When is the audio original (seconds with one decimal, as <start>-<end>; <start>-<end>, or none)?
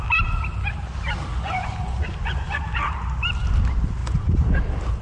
0.0-1.3; 2.6-4.0; 4.6-5.0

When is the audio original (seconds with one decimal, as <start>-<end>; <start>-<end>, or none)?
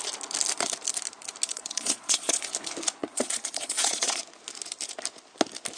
0.0-1.5; 2.5-3.0; 4.2-5.8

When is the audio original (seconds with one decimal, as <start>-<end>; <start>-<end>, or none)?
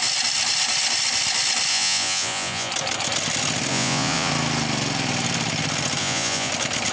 0.0-1.7; 2.7-3.7; 4.3-6.0; 6.5-6.9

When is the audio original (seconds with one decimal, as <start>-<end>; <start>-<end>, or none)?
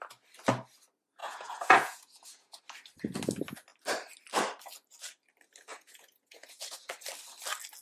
0.0-1.2; 2.6-5.7; 6.9-7.8